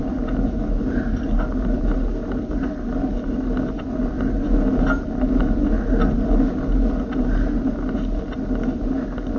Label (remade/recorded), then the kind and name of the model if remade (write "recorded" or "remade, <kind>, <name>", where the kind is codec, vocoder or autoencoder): recorded